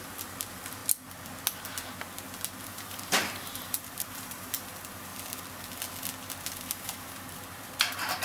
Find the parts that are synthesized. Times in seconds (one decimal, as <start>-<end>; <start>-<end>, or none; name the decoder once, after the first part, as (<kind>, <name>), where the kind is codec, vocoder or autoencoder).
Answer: 0.0-0.8 (vocoder, BigVGAN v2); 2.6-5.1; 6.5-8.2